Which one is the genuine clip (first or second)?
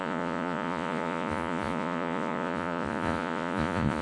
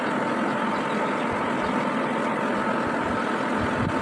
second